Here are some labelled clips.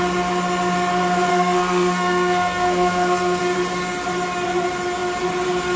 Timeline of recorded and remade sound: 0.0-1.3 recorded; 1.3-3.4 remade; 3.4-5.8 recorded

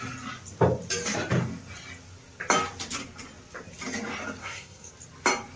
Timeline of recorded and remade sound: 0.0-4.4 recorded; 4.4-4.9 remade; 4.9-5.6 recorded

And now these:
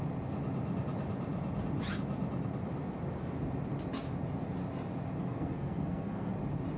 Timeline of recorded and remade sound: 0.0-5.2 recorded; 5.2-6.3 remade; 6.3-6.8 recorded